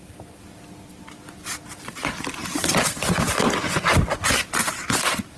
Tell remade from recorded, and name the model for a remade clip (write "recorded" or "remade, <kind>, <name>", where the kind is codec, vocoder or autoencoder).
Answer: recorded